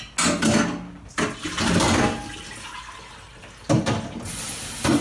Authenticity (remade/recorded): recorded